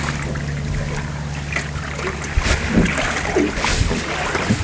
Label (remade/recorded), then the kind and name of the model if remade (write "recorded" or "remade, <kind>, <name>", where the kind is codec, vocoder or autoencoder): recorded